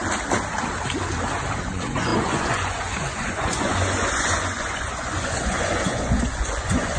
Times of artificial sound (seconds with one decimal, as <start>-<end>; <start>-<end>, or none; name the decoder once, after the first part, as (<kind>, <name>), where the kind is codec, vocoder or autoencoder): 1.6-7.0 (vocoder, Vocos)